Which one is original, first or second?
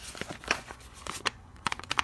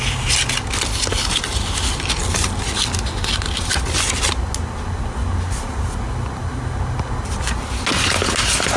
second